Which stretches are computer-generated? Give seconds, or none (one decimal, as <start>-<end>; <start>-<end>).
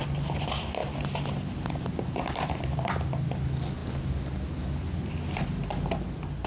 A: none